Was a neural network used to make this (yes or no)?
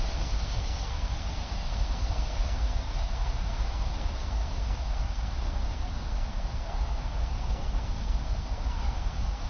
yes